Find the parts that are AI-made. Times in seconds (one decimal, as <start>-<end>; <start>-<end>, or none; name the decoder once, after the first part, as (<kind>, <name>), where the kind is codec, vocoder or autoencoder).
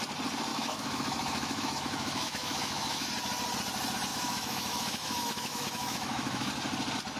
0.5-3.1 (autoencoder, DAC-VAE); 4.1-6.5